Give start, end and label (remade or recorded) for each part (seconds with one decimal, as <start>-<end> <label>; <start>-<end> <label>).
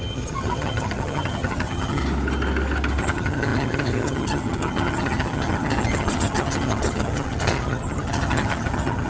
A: 0.0-2.0 remade; 2.0-3.0 recorded; 3.0-9.1 remade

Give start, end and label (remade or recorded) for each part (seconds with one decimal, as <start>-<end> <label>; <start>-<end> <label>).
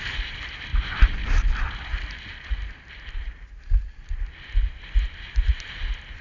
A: 0.0-6.2 recorded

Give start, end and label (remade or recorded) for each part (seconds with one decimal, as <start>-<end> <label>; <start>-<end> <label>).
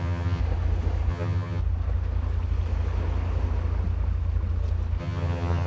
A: 0.0-0.4 remade; 0.4-1.1 recorded; 1.1-1.6 remade; 1.6-5.0 recorded; 5.0-5.7 remade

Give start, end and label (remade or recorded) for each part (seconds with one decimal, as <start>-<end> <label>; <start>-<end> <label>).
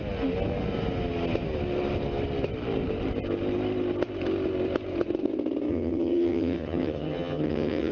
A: 0.0-5.7 recorded; 5.7-7.9 remade